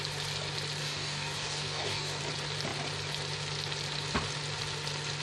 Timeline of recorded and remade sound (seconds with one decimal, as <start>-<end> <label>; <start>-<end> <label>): 0.0-0.8 recorded; 0.8-2.2 remade; 2.2-5.2 recorded